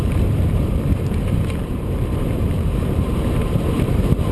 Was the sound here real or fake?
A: fake